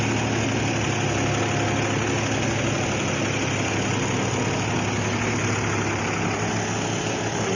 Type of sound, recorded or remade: recorded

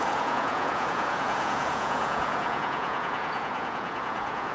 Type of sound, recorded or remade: remade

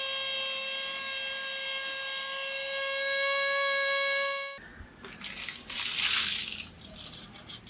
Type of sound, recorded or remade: recorded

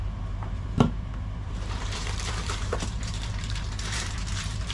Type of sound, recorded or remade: remade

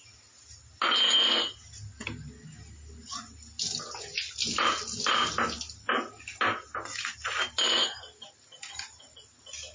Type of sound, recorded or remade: recorded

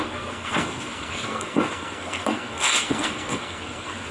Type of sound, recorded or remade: remade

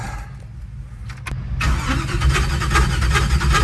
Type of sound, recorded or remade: recorded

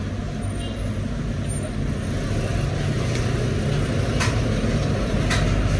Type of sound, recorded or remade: recorded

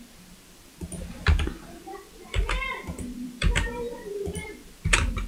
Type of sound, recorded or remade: remade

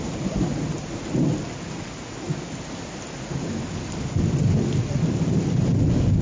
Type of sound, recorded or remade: recorded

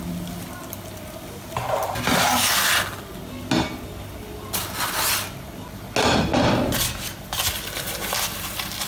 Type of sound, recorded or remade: recorded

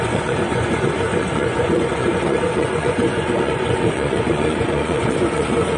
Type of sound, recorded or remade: remade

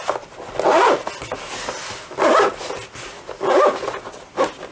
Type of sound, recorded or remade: recorded